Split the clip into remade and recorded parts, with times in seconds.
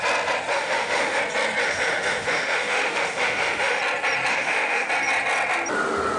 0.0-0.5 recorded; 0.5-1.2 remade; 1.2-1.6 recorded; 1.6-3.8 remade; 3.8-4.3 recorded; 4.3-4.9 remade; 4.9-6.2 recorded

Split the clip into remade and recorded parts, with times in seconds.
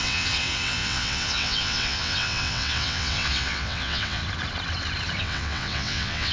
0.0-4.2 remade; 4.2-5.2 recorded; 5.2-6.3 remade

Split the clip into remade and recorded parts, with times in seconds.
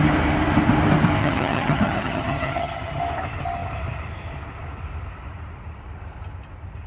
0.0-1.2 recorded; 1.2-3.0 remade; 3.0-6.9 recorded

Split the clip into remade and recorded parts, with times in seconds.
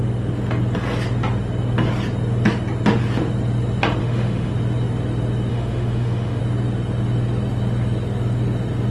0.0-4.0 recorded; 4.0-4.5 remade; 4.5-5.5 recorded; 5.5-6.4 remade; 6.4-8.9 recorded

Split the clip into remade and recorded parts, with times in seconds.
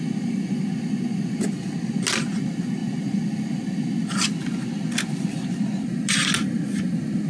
0.0-7.3 recorded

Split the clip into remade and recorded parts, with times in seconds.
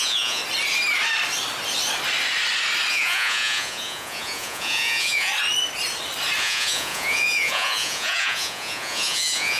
0.0-0.4 remade; 0.4-2.9 recorded; 2.9-5.3 remade; 5.3-6.4 recorded; 6.4-9.6 remade